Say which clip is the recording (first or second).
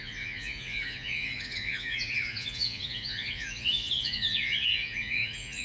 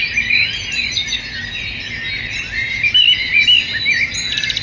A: second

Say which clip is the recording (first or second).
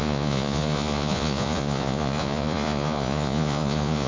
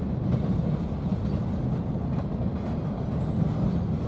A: second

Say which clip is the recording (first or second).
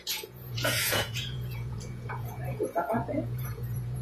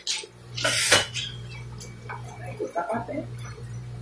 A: second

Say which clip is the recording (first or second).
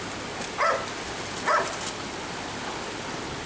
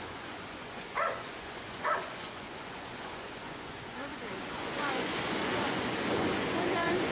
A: first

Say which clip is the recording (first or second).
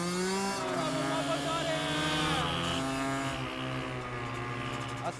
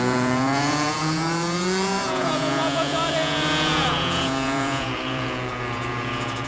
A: first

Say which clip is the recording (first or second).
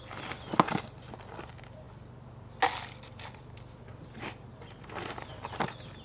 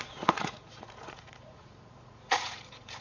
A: first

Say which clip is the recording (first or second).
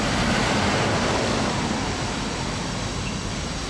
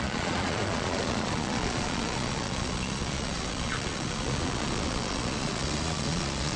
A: first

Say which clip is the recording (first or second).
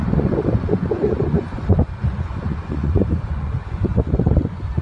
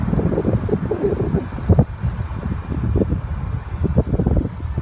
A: second